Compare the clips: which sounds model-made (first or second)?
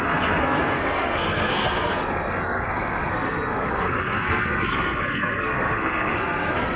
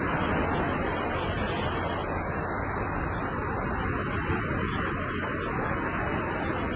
first